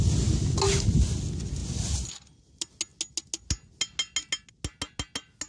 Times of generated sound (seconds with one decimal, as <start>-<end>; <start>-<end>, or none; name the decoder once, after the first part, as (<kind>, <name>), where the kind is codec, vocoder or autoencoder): none